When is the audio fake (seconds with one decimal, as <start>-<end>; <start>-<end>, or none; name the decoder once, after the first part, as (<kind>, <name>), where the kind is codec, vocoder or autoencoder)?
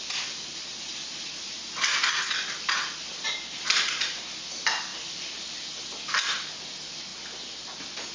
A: none